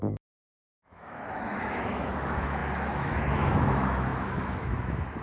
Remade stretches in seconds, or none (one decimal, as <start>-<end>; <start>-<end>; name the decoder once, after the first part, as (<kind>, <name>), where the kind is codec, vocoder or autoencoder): 0.0-5.2 (autoencoder, DAC-VAE)